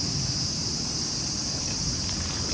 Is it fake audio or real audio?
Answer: real